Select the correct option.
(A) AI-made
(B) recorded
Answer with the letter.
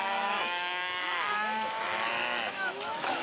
A